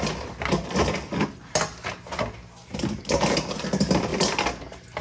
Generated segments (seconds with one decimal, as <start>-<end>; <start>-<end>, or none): none